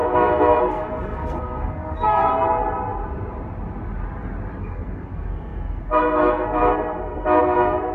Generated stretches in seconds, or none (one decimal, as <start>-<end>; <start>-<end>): 0.0-2.3; 4.6-7.9

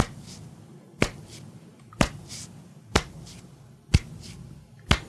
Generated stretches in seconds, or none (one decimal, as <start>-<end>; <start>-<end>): none

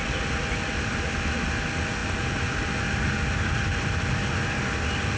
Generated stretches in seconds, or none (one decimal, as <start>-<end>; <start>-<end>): none

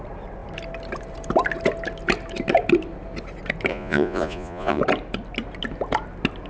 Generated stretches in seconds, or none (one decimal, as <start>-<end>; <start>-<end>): 3.7-4.8

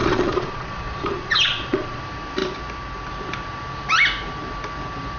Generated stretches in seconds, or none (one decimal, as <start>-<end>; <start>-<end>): 0.0-2.0